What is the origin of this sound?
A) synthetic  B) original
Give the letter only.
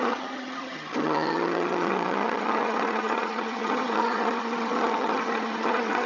A